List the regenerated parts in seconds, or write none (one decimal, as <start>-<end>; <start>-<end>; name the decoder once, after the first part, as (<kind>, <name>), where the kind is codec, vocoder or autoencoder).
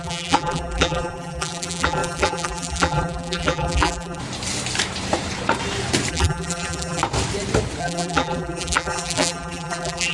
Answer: 0.0-4.2 (vocoder, BigVGAN v2); 6.1-7.0; 7.8-10.1